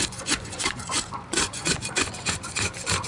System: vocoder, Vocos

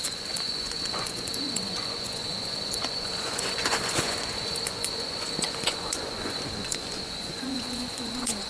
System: vocoder, Vocos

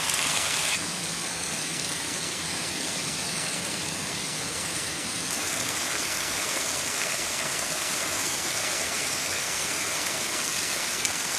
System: codec, SNAC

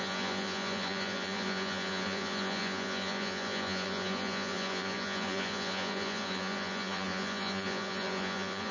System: vocoder, Vocos